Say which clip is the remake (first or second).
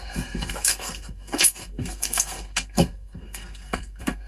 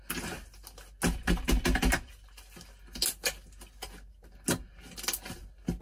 first